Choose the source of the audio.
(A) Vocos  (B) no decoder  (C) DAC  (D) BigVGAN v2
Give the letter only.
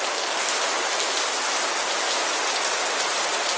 B